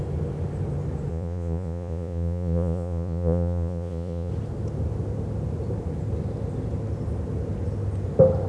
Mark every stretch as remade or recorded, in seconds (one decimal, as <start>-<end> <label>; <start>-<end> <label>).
0.0-1.1 recorded; 1.1-4.3 remade; 4.3-8.5 recorded